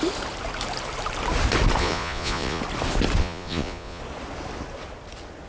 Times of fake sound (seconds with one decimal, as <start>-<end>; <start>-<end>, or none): 1.8-2.6; 3.2-4.0